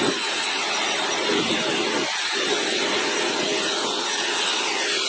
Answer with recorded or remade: recorded